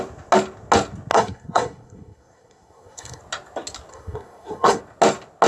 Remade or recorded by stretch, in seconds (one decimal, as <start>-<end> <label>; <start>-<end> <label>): 0.0-1.1 recorded; 1.1-3.2 remade; 3.2-3.9 recorded; 3.9-4.8 remade; 4.8-5.5 recorded